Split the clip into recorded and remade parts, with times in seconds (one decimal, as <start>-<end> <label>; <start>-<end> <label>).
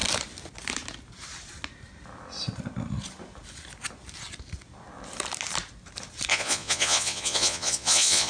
0.0-6.3 recorded; 6.3-8.3 remade